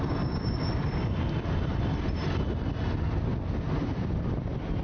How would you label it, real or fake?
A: real